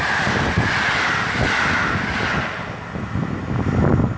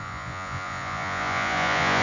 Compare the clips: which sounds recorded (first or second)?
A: first